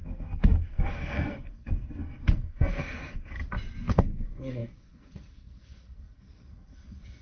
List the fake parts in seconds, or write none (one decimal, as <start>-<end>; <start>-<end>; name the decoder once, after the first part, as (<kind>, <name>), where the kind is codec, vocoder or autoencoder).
0.0-3.4 (codec, SNAC); 3.9-7.2